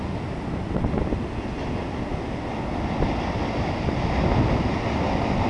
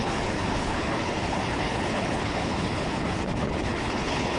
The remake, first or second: second